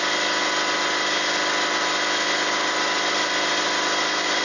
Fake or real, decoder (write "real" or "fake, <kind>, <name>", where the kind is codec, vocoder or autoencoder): real